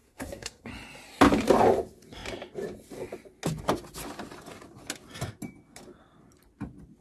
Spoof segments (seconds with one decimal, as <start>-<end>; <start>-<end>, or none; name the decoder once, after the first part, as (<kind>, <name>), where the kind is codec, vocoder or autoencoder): 0.0-0.7 (codec, SNAC)